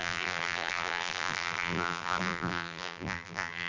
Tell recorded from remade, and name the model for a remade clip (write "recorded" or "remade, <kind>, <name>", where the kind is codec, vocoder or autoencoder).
remade, vocoder, BigVGAN v2